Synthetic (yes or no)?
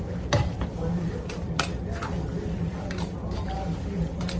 no